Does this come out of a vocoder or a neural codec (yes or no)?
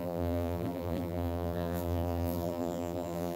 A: yes